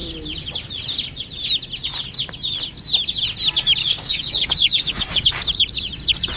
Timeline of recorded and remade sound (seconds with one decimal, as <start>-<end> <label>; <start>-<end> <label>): 0.0-3.8 recorded; 3.8-5.3 remade; 5.3-6.4 recorded